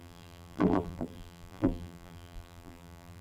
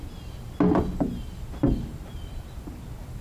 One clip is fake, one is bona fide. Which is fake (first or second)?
first